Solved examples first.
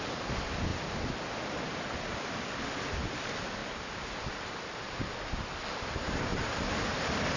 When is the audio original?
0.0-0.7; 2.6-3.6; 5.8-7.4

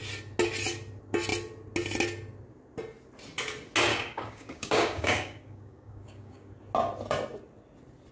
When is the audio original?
0.0-3.9; 6.5-8.1

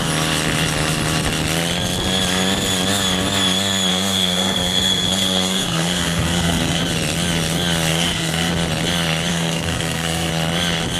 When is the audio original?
0.0-3.9; 6.8-7.9; 8.5-9.3; 10.3-11.0